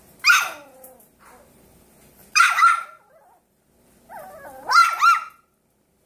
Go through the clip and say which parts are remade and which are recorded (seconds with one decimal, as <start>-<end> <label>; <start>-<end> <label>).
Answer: 0.0-4.8 remade; 4.8-6.1 recorded